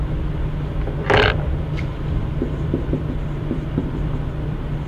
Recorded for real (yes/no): no